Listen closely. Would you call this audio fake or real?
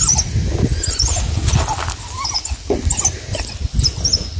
real